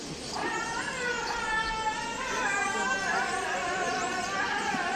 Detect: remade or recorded recorded